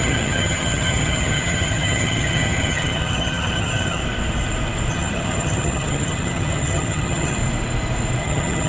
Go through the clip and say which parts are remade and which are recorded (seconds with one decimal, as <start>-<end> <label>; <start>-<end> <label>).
0.0-4.0 remade; 4.0-4.9 recorded; 4.9-7.4 remade; 7.4-8.2 recorded; 8.2-8.7 remade